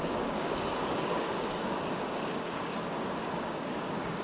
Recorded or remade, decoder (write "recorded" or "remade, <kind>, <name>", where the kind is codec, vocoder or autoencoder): remade, codec, DAC